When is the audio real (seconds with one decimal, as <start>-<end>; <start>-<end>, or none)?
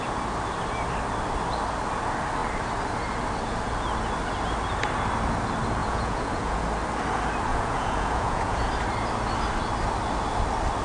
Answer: 0.0-5.8; 6.6-7.5; 8.7-10.8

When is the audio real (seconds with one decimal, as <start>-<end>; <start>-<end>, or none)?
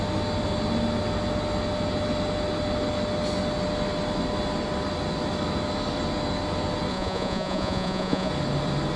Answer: 0.0-6.9; 8.3-9.0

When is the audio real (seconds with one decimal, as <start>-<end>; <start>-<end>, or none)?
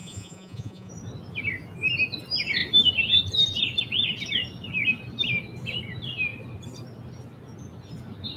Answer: 0.9-8.4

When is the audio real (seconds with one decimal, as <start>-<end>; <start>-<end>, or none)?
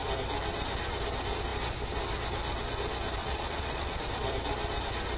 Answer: 0.0-3.2; 4.0-5.2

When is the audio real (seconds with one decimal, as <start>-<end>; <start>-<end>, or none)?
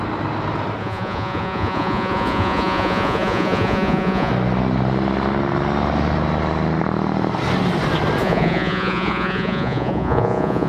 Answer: 0.0-0.8; 4.3-8.2